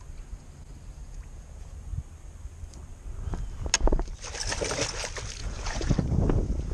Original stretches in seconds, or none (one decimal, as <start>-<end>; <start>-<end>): 0.0-1.0; 1.6-5.4; 5.9-6.7

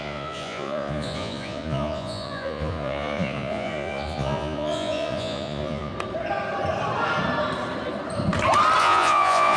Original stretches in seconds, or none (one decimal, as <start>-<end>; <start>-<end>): 5.9-8.8